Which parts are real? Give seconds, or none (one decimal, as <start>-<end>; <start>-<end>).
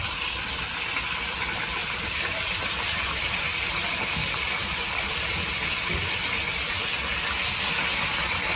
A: 0.0-1.8; 3.5-4.2; 5.1-8.6